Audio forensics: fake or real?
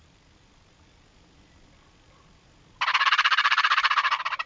real